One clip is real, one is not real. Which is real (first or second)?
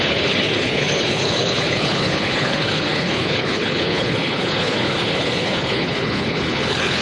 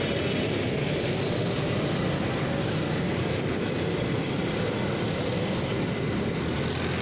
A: second